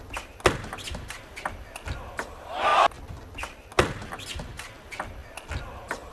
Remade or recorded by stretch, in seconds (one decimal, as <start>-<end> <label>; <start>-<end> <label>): 0.0-6.1 recorded